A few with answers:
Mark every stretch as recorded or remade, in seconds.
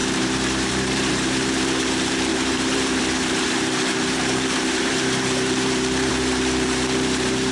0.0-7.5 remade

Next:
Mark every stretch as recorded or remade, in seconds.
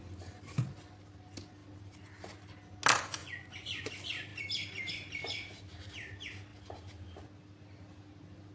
0.0-3.2 recorded; 3.2-3.9 remade; 3.9-8.5 recorded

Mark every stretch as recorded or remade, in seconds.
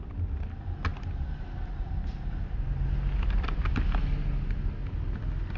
0.0-5.6 recorded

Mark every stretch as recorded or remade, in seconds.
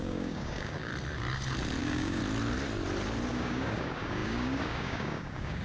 0.0-0.9 remade; 0.9-1.8 recorded; 1.8-2.2 remade; 2.2-3.3 recorded; 3.3-5.6 remade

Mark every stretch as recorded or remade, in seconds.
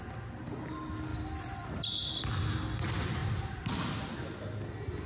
0.0-5.1 recorded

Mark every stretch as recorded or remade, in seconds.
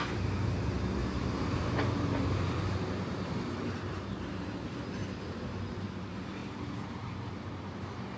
0.0-1.0 recorded; 1.0-4.6 remade; 4.6-5.0 recorded; 5.0-5.6 remade; 5.6-6.4 recorded; 6.4-7.3 remade; 7.3-8.2 recorded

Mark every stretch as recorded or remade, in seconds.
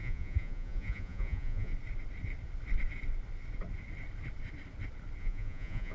0.0-1.7 remade; 1.7-5.2 recorded; 5.2-5.9 remade